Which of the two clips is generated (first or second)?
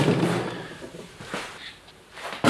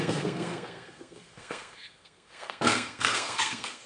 second